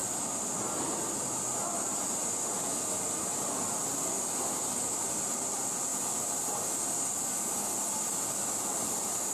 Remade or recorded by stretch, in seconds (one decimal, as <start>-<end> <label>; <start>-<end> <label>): 0.0-9.3 recorded